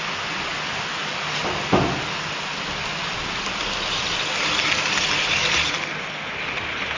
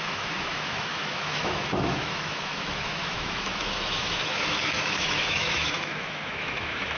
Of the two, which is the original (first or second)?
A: first